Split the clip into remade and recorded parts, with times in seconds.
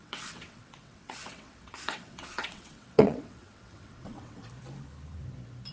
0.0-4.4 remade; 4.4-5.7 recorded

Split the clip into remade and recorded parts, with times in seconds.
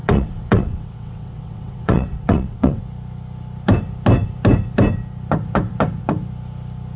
0.0-2.8 remade; 2.8-7.0 recorded